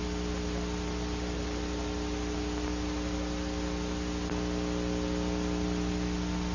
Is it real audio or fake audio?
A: real